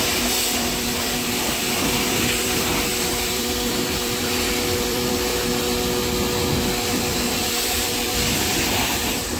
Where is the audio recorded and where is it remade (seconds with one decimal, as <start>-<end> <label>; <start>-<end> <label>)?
0.0-5.3 remade; 5.3-6.9 recorded; 6.9-9.4 remade